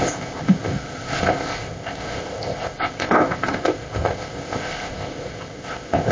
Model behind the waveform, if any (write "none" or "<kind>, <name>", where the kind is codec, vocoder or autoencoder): codec, ZipCodec